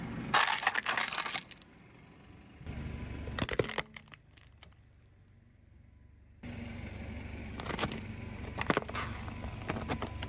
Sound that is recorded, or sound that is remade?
recorded